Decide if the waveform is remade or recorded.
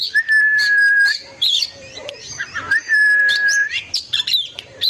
remade